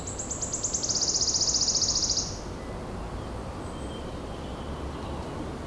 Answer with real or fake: real